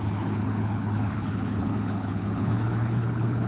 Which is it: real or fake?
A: fake